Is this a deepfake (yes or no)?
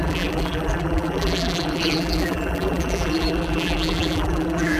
yes